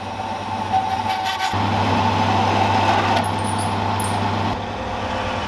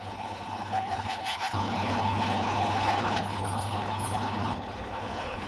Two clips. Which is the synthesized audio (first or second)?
second